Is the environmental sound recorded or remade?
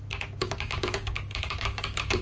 remade